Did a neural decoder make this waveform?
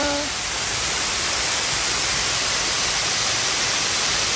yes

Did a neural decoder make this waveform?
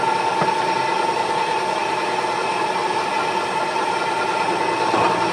no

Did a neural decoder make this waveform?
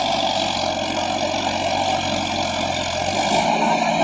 no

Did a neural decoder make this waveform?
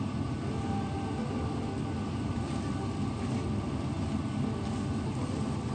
no